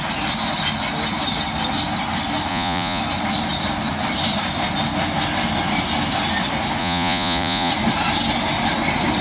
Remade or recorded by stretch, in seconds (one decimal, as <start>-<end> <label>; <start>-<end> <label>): 0.0-2.5 recorded; 2.5-3.0 remade; 3.0-6.8 recorded; 6.8-7.7 remade; 7.7-9.2 recorded